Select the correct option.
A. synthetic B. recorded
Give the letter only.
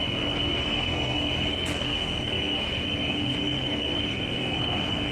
A